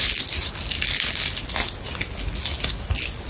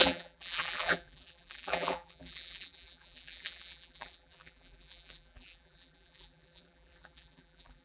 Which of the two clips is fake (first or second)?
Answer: second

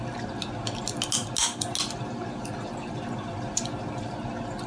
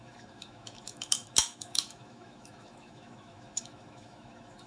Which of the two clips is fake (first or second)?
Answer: second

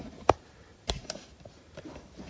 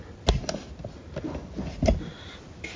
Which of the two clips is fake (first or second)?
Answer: first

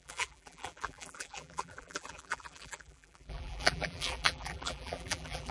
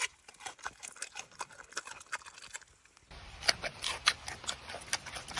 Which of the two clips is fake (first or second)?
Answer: first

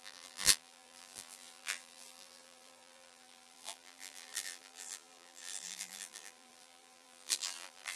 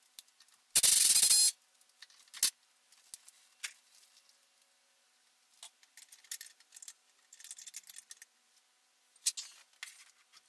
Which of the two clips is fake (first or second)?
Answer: first